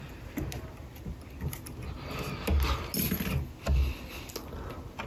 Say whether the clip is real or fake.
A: real